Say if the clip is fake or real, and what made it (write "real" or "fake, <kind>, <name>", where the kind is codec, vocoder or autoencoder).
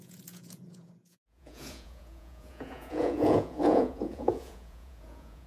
fake, vocoder, Vocos